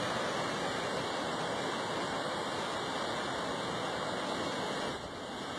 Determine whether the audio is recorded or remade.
recorded